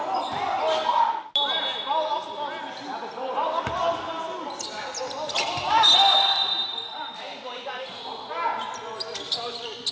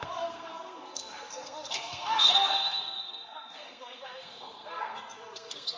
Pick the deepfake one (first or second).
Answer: second